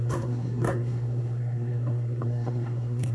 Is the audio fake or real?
fake